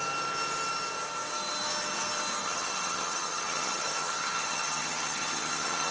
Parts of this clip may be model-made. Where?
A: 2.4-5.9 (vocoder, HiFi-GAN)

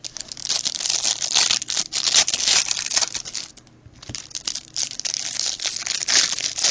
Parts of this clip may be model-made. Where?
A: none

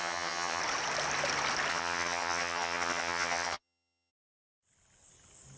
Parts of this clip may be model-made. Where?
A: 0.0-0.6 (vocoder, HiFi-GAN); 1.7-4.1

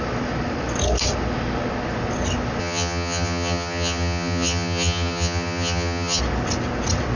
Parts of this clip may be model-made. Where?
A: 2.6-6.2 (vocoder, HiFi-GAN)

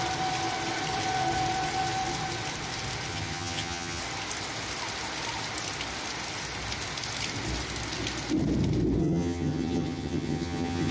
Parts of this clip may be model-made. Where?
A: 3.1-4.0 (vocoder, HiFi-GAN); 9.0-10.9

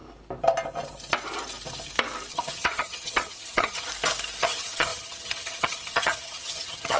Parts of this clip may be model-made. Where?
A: 2.3-3.9 (vocoder, HiFi-GAN); 4.4-7.0